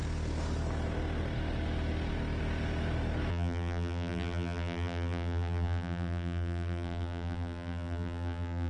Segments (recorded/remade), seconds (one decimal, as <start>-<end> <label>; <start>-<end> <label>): 0.0-3.3 recorded; 3.3-8.7 remade